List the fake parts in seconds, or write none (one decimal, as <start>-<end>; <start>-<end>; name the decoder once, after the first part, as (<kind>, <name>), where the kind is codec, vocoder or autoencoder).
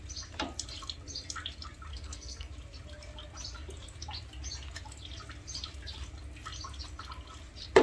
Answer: 1.9-2.5 (codec, SNAC)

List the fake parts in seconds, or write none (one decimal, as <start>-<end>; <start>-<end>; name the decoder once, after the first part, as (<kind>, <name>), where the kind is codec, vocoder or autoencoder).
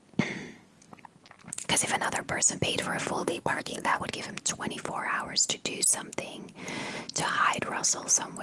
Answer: 3.2-4.0 (codec, SNAC)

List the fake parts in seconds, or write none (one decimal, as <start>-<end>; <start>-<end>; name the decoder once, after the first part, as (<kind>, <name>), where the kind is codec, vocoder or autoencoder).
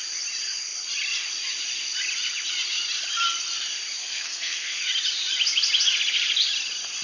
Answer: 4.0-4.8 (codec, SNAC)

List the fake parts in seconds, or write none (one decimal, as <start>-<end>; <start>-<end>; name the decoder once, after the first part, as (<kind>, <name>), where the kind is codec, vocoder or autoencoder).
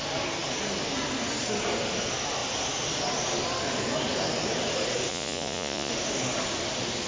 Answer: 5.1-5.9 (vocoder, Vocos)